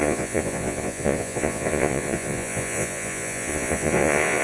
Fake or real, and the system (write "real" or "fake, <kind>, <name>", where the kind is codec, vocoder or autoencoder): fake, vocoder, Vocos